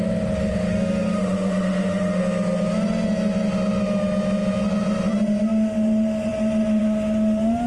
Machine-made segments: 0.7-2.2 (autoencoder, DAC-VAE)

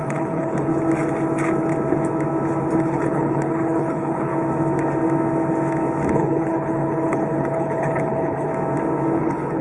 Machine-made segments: 0.0-0.7 (codec, HILCodec); 2.8-4.3; 6.1-8.5; 9.2-9.6

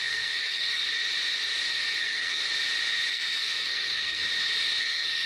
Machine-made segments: 0.0-0.8 (codec, SNAC); 2.0-2.4; 3.1-4.2; 4.8-5.3